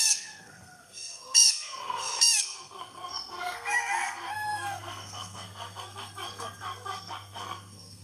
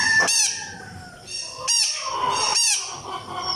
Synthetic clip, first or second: first